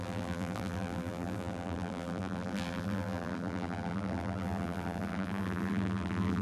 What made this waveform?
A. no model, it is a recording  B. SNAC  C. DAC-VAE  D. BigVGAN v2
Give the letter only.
D